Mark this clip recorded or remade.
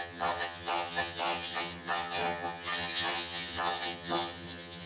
remade